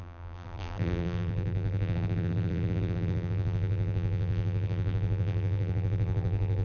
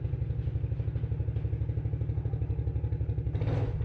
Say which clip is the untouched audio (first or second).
second